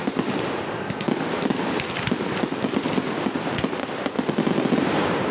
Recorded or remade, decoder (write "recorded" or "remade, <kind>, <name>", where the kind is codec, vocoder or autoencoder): remade, vocoder, BigVGAN v2